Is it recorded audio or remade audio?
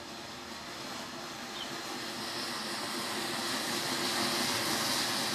recorded